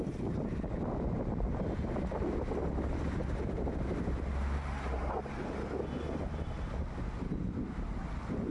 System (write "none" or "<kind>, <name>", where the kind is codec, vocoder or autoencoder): none